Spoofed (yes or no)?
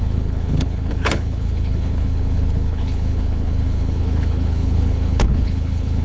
yes